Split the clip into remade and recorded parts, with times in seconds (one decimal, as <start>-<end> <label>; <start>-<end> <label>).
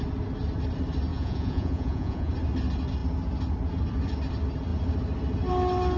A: 0.0-1.1 recorded; 1.1-2.3 remade; 2.3-6.0 recorded